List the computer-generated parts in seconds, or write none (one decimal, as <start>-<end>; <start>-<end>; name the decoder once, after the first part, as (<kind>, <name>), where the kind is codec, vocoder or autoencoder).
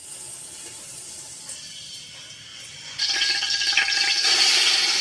2.5-3.2 (vocoder, Vocos)